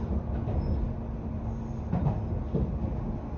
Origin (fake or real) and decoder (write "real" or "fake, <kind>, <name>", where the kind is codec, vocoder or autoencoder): real